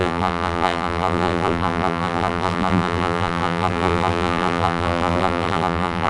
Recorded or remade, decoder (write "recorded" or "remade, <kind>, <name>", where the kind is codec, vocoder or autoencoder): remade, vocoder, BigVGAN v2